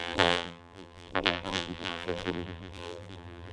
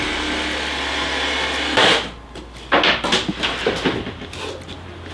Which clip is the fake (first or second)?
first